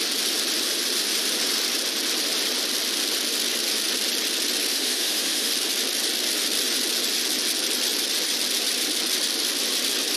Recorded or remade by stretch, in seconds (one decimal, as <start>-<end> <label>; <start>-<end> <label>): 0.0-4.7 recorded; 4.7-5.5 remade; 5.5-10.2 recorded